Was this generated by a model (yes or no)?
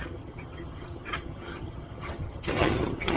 yes